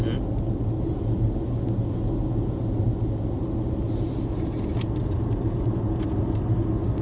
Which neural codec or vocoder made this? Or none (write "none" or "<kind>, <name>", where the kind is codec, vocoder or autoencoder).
none